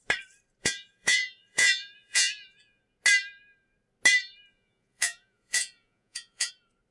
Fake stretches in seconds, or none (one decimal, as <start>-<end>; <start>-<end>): 0.6-2.8; 4.5-6.5